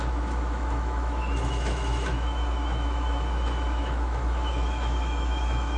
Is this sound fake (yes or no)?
yes